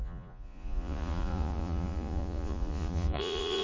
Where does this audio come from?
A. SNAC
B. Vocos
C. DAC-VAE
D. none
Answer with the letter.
B